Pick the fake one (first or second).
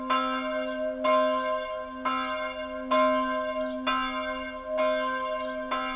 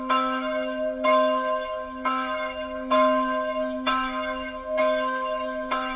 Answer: second